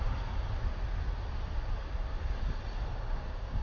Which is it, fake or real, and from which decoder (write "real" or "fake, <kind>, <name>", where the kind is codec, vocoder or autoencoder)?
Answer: real